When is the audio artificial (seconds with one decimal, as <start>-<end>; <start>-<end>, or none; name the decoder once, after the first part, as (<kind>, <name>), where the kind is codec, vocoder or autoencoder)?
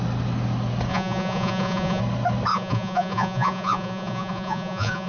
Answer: 0.9-2.0 (vocoder, Vocos); 2.5-5.1